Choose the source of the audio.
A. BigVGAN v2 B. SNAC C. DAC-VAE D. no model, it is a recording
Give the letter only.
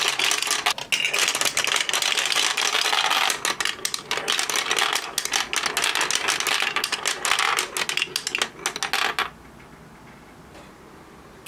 D